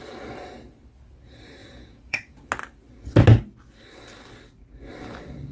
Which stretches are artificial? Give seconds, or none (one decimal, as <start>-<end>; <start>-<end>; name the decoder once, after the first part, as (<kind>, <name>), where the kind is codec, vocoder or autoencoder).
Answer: 1.6-2.5 (vocoder, Vocos)